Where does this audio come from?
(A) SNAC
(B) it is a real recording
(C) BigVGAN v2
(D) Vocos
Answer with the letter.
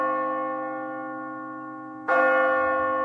B